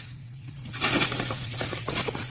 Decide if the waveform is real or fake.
fake